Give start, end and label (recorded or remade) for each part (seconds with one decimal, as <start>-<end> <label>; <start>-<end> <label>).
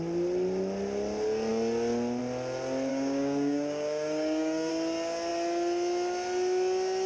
0.0-2.9 recorded; 2.9-4.7 remade; 4.7-7.1 recorded